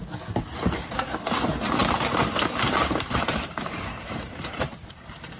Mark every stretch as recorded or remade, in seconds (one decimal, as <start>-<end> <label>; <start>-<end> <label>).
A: 0.0-0.6 recorded; 0.6-5.4 remade